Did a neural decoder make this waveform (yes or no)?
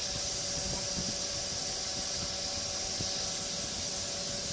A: no